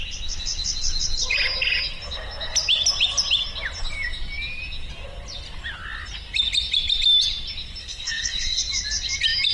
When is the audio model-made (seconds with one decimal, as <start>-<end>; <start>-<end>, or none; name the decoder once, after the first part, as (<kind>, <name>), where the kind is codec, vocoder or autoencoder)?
7.8-8.6 (codec, SNAC)